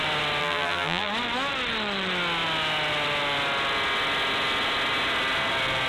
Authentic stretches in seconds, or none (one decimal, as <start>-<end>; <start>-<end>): 0.0-0.4; 1.1-5.9